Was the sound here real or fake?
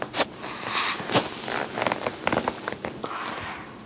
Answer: real